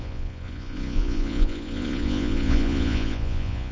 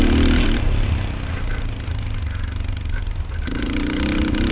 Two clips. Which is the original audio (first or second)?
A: second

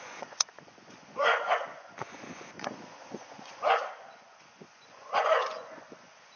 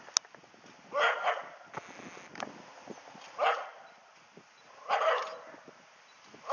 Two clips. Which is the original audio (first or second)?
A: second